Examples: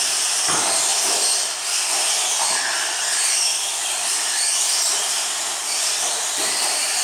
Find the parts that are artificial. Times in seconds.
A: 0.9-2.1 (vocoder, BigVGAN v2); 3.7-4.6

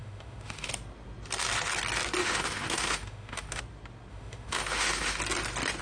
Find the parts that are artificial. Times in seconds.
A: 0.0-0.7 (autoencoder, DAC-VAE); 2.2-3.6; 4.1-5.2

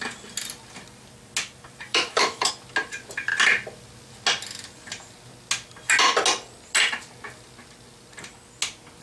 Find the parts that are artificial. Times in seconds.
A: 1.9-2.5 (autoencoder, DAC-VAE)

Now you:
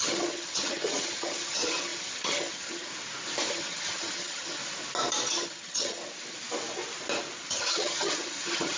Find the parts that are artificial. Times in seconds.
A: 0.0-2.9 (vocoder, HiFi-GAN); 3.5-4.6; 5.3-6.0; 7.5-8.8

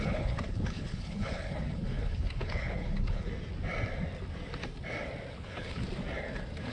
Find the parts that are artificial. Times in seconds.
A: 0.0-3.3 (codec, HILCodec); 5.3-5.8

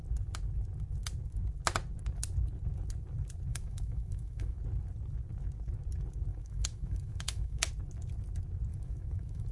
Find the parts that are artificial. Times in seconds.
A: 3.5-4.6 (autoencoder, DAC-VAE); 6.3-7.7; 8.7-9.5

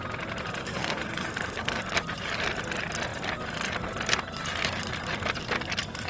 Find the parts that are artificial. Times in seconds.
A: 0.6-1.8 (codec, SNAC)

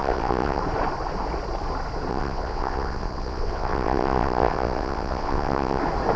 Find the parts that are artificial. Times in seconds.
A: 0.0-0.6 (vocoder, WaveNeXt); 2.1-5.8